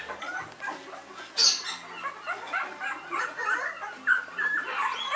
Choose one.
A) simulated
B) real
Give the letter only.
B